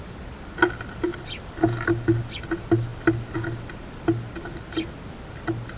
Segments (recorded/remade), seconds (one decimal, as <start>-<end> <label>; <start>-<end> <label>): 0.0-5.8 recorded